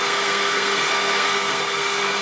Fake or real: fake